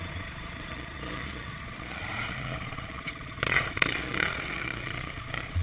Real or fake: fake